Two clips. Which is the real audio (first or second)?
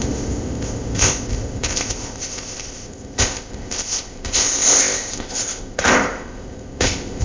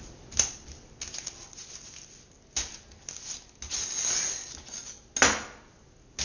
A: second